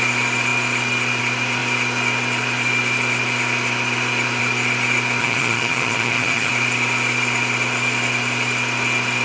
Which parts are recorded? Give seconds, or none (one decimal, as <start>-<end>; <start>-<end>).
0.0-5.2; 6.5-9.2